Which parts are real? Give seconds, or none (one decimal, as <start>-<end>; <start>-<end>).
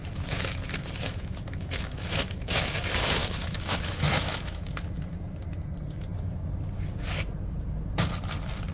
2.6-3.2; 4.6-8.7